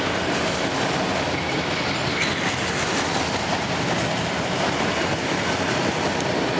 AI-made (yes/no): no